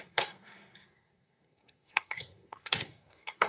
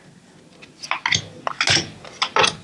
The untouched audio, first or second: second